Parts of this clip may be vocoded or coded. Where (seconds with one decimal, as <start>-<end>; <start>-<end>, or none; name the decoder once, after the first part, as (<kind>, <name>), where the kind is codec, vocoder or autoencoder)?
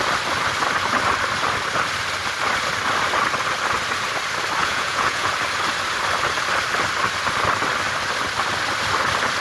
4.6-5.3 (vocoder, Vocos)